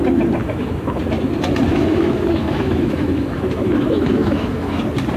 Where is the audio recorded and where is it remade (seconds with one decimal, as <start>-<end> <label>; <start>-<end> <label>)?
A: 0.0-0.4 recorded; 0.4-1.0 remade; 1.0-1.7 recorded; 1.7-4.8 remade; 4.8-5.2 recorded